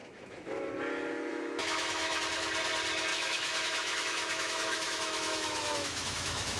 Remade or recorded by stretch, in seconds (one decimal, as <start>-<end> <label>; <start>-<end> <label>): 0.0-0.7 remade; 0.7-1.3 recorded; 1.3-2.2 remade; 2.2-3.1 recorded; 3.1-6.6 remade